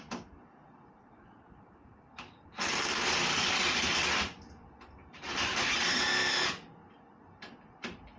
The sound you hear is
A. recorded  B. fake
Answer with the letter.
A